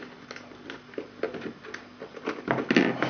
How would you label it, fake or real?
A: real